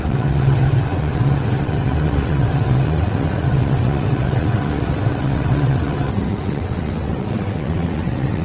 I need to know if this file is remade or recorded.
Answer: remade